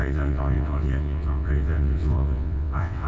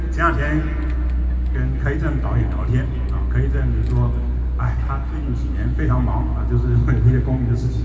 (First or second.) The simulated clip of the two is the first